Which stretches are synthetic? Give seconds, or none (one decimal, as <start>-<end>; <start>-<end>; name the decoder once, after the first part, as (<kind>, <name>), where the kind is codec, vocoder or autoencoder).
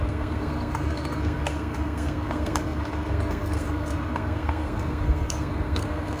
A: 0.0-6.2 (codec, SNAC)